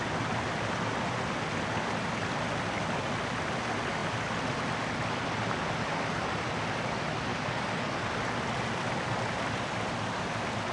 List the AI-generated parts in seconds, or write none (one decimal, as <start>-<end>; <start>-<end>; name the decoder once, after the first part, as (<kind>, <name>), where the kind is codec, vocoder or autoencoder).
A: 7.3-8.0 (codec, DAC)